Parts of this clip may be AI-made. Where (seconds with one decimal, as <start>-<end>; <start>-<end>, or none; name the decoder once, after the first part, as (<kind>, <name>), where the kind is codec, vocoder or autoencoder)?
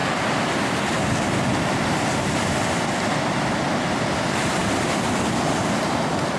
none